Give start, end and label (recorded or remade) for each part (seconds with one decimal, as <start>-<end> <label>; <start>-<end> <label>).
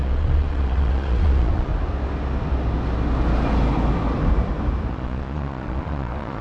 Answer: 0.0-1.7 remade; 1.7-4.9 recorded; 4.9-6.4 remade